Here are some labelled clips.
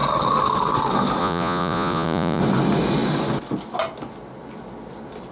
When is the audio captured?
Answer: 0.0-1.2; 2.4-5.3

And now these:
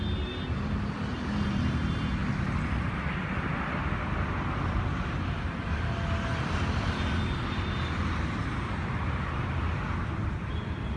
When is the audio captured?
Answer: 0.0-11.0

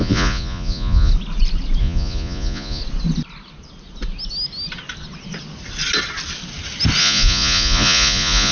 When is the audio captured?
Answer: 1.1-1.8; 2.8-7.0

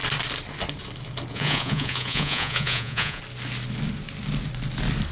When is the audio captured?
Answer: 0.0-1.3; 3.2-5.1

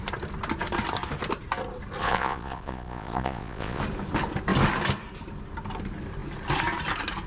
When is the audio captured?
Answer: 0.0-2.0; 3.8-7.3

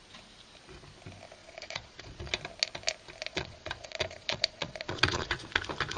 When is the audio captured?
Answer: 0.0-1.4; 2.3-3.3; 5.5-6.0

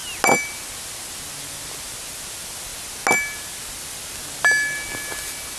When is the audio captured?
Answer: 0.0-5.6

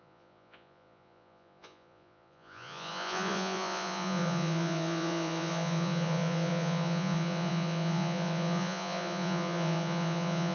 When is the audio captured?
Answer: none